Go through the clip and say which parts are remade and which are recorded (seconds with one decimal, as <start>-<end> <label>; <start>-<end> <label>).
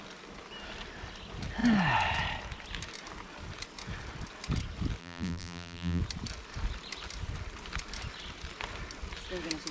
0.0-5.0 recorded; 5.0-6.0 remade; 6.0-9.7 recorded